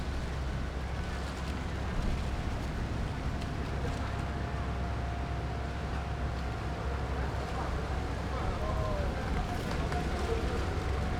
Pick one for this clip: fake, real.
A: real